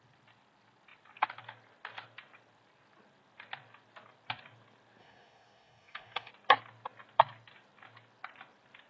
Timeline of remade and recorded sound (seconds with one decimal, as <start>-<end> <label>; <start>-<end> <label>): 0.0-5.0 recorded; 5.0-6.3 remade; 6.3-8.9 recorded